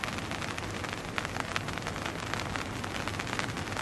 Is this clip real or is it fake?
real